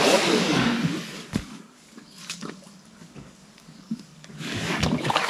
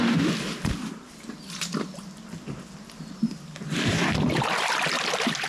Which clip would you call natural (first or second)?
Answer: second